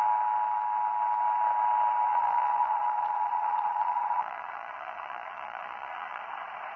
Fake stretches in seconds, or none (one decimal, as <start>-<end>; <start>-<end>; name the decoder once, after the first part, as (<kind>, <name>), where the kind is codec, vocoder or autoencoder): 2.1-6.2 (vocoder, Vocos)